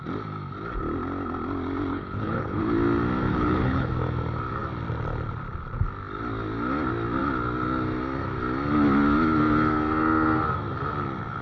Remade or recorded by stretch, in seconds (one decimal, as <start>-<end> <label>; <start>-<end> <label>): 0.0-1.9 recorded; 1.9-2.6 remade; 2.6-3.3 recorded; 3.3-3.9 remade; 3.9-11.4 recorded

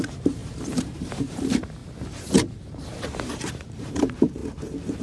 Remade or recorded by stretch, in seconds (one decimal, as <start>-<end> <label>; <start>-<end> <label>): 0.0-4.4 remade; 4.4-5.0 recorded

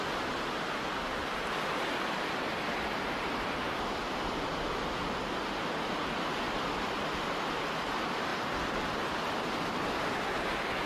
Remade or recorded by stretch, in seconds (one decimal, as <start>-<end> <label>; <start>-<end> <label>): 0.0-10.9 recorded

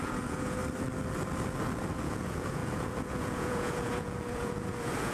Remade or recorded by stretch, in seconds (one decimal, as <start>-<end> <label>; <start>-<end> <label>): 0.0-0.6 remade; 0.6-1.9 recorded; 1.9-5.1 remade